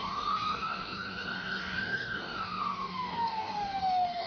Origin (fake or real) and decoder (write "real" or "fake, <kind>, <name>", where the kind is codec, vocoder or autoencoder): fake, codec, DAC